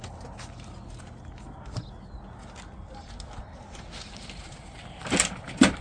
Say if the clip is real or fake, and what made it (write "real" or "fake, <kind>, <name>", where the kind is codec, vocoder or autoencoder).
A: real